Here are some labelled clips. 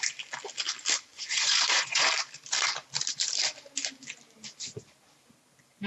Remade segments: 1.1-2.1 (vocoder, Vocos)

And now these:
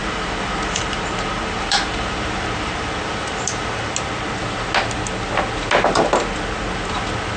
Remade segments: 0.0-3.9 (vocoder, BigVGAN v2)

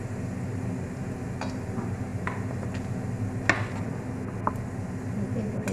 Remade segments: none

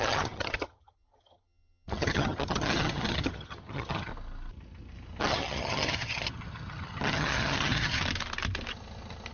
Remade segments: 0.0-4.1 (vocoder, HiFi-GAN); 5.2-8.0

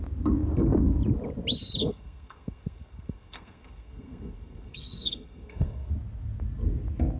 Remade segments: 1.8-5.9 (codec, SNAC)

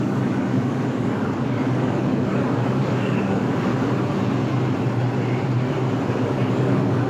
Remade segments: 0.0-3.7 (codec, DAC); 6.1-7.1

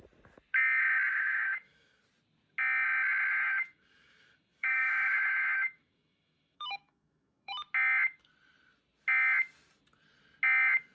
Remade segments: 1.1-2.0 (autoencoder, DAC-VAE); 3.3-7.5